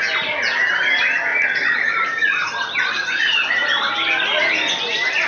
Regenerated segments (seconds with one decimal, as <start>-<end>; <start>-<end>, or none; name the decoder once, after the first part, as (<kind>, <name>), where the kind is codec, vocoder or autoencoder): 1.3-1.9 (vocoder, Vocos)